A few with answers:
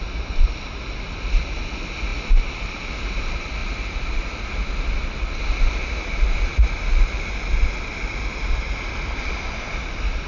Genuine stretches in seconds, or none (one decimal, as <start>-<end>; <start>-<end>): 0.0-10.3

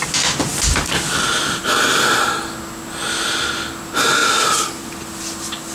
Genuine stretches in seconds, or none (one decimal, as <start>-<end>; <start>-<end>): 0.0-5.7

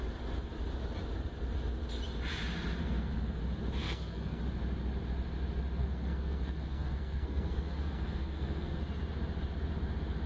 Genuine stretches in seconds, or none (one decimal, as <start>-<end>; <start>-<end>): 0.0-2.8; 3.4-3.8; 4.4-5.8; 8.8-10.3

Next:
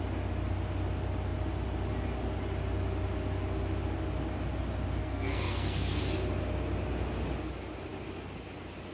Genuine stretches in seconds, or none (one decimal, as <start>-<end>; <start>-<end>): 0.0-5.0; 6.0-8.9

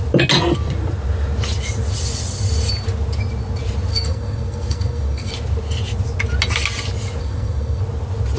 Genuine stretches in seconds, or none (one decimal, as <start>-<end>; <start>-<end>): 0.0-3.9; 5.3-7.2; 7.8-8.4